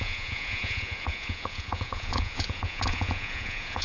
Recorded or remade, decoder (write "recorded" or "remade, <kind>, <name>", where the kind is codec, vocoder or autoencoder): remade, vocoder, Vocos